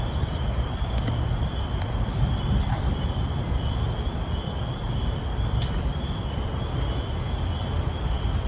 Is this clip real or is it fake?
fake